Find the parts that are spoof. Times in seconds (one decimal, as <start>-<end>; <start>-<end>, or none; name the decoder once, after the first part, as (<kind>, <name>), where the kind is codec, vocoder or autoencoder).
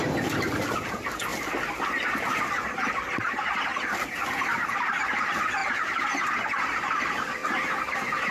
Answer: 0.0-1.3 (vocoder, BigVGAN v2); 2.5-7.4